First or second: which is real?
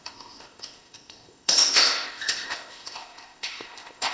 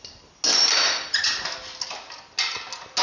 second